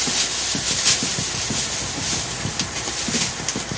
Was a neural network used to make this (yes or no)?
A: no